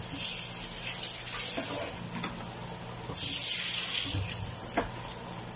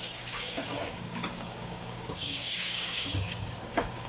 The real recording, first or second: first